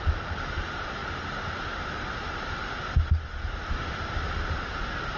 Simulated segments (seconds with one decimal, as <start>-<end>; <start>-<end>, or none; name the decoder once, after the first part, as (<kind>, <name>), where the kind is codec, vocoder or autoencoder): none

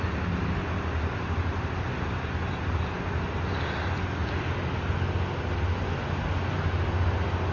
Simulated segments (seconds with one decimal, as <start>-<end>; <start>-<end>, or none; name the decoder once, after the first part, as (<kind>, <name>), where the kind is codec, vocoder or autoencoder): none

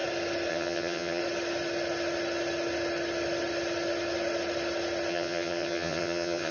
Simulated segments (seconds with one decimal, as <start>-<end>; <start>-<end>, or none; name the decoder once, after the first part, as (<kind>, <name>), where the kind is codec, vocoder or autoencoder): 0.5-1.2 (vocoder, HiFi-GAN); 5.1-6.5